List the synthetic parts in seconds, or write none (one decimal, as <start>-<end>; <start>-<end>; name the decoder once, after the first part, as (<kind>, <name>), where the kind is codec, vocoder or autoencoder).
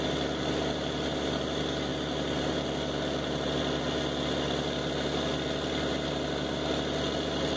none